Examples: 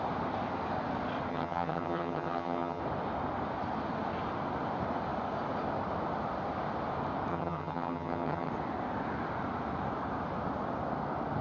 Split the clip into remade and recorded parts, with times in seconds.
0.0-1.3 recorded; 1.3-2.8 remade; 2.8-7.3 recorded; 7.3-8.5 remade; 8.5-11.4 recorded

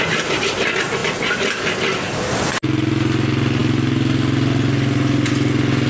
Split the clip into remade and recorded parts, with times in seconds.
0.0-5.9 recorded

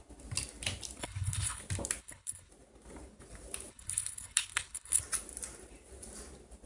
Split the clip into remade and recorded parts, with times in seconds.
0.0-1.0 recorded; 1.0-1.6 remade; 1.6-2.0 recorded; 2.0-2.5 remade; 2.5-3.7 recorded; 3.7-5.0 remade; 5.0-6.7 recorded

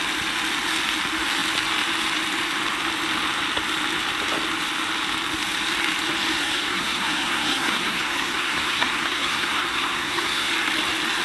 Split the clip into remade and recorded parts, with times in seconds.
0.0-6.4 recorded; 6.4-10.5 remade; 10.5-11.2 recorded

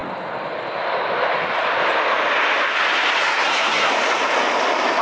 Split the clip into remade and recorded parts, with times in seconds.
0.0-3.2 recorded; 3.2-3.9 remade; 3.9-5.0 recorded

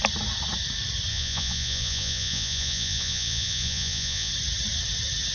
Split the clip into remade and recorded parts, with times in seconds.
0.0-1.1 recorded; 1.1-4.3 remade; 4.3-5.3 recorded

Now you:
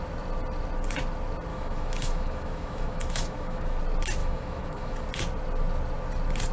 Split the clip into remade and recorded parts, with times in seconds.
0.0-1.5 recorded; 1.5-3.8 remade; 3.8-4.2 recorded; 4.2-5.1 remade; 5.1-6.5 recorded

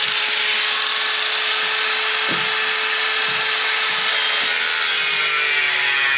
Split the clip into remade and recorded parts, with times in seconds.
0.0-6.2 recorded